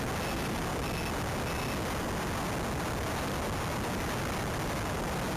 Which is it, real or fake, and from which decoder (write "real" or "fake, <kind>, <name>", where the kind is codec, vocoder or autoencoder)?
real